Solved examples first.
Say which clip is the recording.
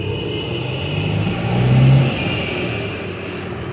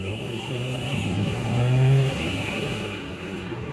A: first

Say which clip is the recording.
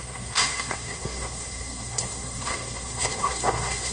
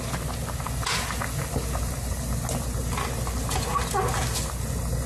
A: second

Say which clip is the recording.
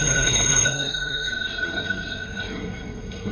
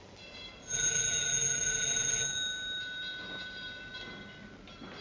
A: second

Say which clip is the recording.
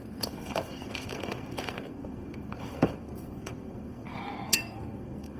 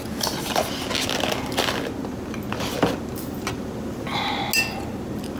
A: second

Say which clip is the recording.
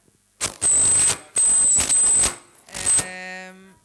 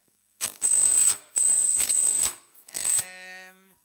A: first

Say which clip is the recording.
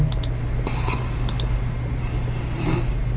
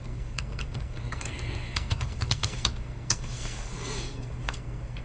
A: first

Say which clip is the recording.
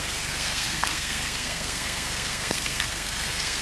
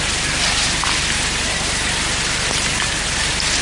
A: second